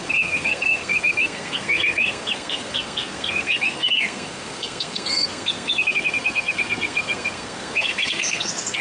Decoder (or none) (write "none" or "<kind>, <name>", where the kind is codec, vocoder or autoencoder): codec, SNAC